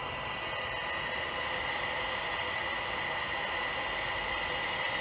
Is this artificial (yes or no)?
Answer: no